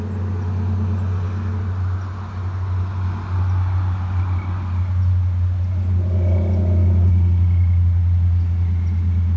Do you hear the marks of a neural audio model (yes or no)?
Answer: no